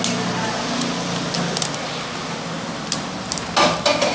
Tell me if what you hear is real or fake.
real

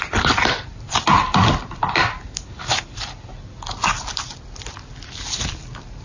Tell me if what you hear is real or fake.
real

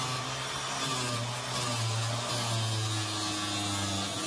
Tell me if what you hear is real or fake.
real